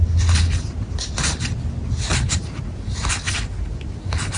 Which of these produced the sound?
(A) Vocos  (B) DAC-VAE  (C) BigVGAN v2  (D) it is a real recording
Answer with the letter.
D